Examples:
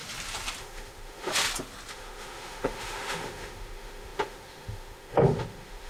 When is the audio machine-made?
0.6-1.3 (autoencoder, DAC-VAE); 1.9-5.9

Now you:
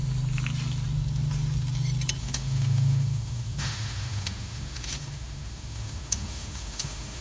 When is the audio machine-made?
2.2-7.2 (autoencoder, DAC-VAE)

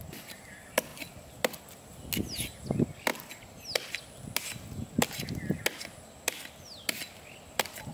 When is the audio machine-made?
none

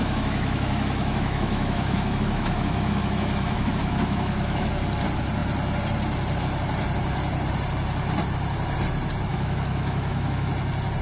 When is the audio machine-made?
0.0-4.7 (autoencoder, DAC-VAE); 9.3-10.5

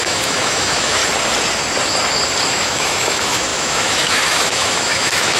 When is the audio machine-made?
0.0-1.0 (autoencoder, DAC-VAE); 2.5-5.4